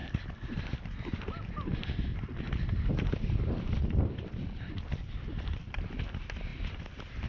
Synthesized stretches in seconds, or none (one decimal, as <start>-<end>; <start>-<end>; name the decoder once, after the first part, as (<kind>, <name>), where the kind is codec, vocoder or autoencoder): 0.0-0.8 (vocoder, BigVGAN v2); 2.1-4.7; 6.5-7.3